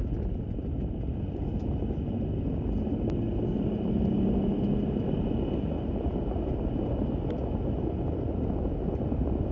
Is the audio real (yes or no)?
yes